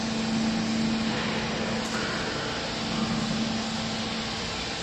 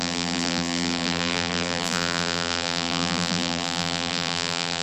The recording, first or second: first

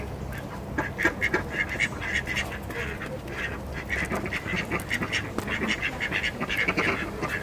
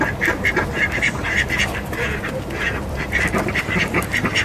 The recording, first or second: first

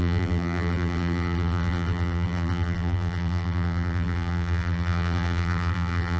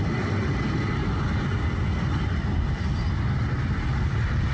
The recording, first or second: second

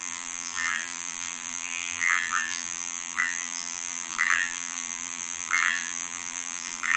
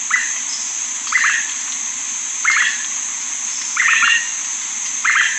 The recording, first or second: second